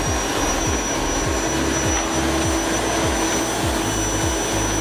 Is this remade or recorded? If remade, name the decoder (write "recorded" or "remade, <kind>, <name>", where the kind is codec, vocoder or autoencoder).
recorded